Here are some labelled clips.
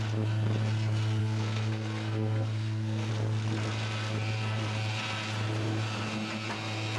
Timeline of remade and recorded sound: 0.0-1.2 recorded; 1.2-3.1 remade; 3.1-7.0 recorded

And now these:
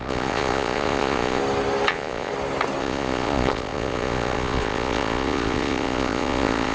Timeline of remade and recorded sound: 0.0-1.4 remade; 1.4-1.9 recorded; 1.9-2.3 remade; 2.3-2.8 recorded; 2.8-6.7 remade

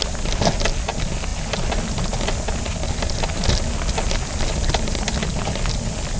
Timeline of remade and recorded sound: 0.0-6.2 recorded